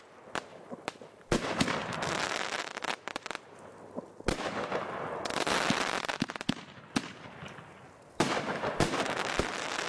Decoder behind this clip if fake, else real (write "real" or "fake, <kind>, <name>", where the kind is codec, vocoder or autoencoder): real